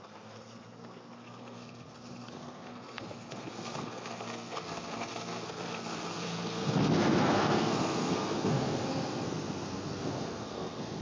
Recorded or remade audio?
remade